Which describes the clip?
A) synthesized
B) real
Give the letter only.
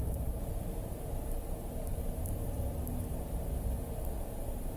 A